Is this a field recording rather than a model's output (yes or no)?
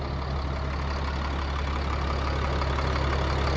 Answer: yes